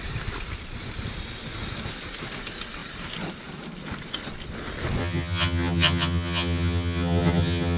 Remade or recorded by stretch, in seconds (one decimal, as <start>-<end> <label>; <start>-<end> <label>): 0.0-5.0 recorded; 5.0-7.8 remade